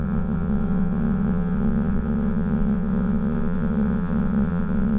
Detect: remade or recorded remade